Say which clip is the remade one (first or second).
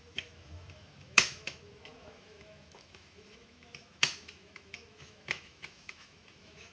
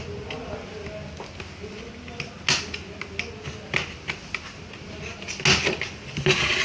first